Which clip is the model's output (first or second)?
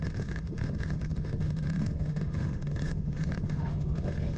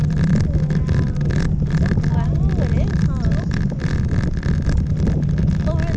first